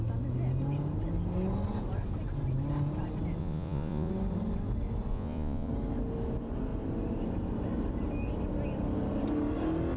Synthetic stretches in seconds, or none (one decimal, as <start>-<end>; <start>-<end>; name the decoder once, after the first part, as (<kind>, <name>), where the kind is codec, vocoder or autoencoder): 3.4-4.1 (vocoder, Vocos); 5.1-5.7